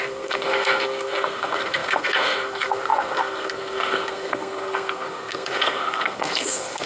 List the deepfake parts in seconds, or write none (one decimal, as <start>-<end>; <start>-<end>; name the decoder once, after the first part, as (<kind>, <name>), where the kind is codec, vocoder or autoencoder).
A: 0.0-6.9 (codec, SNAC)